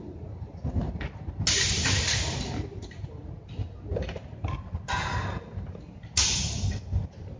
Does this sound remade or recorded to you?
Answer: recorded